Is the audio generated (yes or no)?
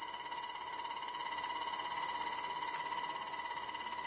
no